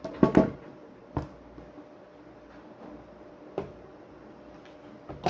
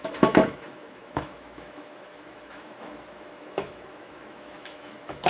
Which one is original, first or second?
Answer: first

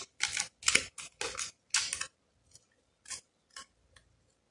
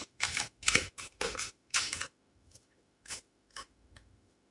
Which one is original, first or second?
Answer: first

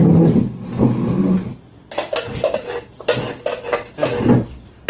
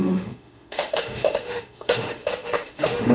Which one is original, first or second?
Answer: first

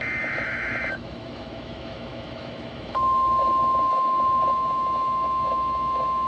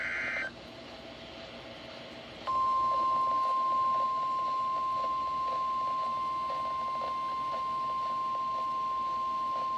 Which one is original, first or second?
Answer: second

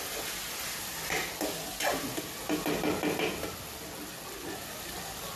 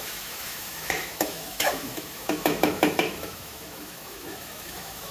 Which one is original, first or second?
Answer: first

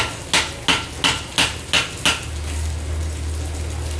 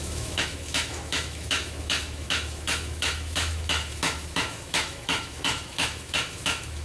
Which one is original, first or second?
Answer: first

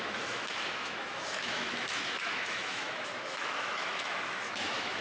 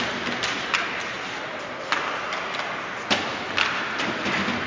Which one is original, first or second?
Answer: second